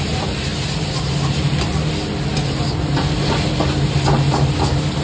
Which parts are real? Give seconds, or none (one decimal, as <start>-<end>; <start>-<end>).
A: 0.0-5.0